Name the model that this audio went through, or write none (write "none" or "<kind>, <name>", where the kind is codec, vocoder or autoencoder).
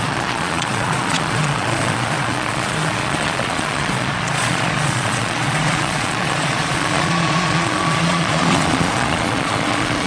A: vocoder, Vocos